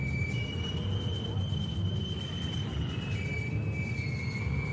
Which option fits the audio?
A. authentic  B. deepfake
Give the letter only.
A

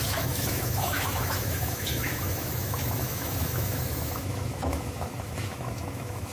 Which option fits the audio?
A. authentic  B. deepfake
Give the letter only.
B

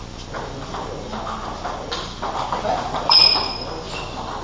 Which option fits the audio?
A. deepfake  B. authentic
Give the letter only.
B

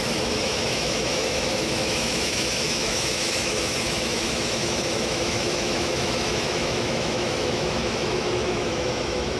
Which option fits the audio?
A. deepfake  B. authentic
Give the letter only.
A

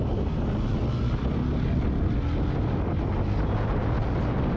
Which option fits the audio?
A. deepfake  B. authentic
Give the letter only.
B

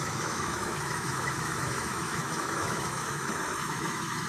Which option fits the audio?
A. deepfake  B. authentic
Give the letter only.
A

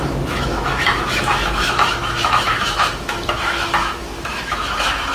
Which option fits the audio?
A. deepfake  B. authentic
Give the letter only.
A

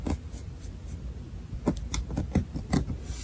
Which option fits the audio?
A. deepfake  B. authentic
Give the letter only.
B